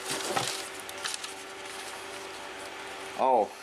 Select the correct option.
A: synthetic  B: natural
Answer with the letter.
B